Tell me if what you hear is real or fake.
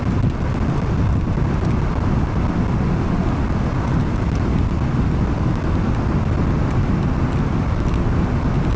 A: real